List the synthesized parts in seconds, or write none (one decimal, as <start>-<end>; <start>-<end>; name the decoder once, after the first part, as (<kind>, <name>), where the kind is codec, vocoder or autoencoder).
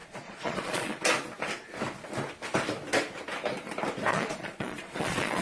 0.0-1.0 (vocoder, Vocos); 4.1-5.4